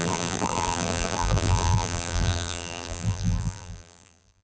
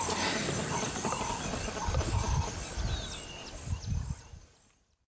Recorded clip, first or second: second